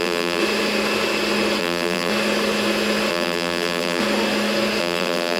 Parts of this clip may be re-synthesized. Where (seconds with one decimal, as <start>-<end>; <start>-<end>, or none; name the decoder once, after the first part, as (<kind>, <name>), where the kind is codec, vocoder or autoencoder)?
0.0-0.4 (vocoder, BigVGAN v2); 1.6-2.1; 3.1-4.0; 4.8-5.4